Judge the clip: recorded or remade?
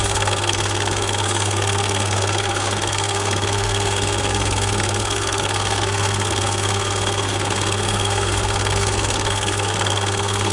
remade